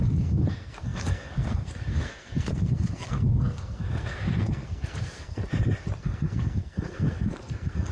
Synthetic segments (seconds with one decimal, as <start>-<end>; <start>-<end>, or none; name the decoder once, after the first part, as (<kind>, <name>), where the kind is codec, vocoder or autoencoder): 0.0-5.4 (codec, SNAC); 6.0-7.9